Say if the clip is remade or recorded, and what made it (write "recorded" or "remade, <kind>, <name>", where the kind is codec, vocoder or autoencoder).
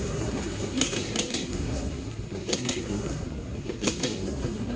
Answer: remade, codec, SNAC